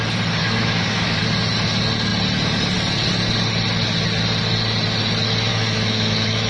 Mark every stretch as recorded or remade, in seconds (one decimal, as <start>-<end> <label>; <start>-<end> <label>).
0.0-0.4 recorded; 0.4-1.2 remade; 1.2-5.5 recorded; 5.5-6.5 remade